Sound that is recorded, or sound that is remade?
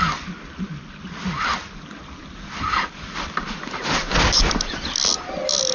recorded